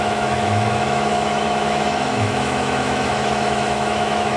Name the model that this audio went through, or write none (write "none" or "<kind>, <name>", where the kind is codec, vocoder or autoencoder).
autoencoder, DAC-VAE